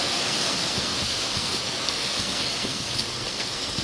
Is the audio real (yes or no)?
no